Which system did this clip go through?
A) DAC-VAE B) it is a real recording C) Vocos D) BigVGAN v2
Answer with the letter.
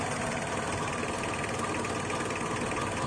B